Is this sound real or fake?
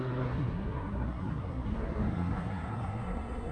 fake